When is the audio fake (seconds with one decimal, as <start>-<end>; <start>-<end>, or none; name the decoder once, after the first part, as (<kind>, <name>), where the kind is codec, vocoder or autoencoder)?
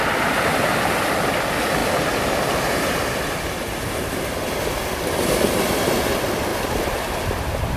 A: 6.5-7.8 (vocoder, BigVGAN v2)